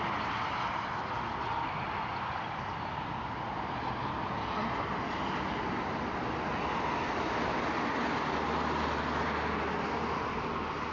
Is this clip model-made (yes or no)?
no